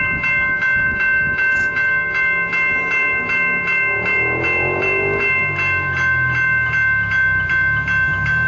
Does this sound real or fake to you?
real